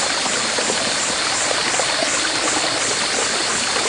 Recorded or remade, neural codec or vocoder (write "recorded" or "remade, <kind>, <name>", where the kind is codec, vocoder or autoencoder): recorded